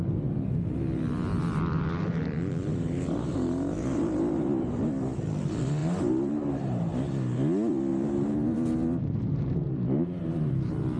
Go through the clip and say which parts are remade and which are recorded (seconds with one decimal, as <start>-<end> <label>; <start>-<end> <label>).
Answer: 0.0-2.7 recorded; 2.7-4.8 remade; 4.8-5.8 recorded; 5.8-6.5 remade; 6.5-7.9 recorded; 7.9-10.5 remade; 10.5-11.0 recorded